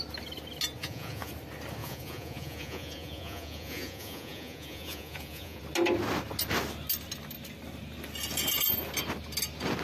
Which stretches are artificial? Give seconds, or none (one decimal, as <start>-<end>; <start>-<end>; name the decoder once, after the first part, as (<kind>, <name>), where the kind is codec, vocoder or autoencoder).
0.8-1.3 (vocoder, Vocos); 1.8-5.6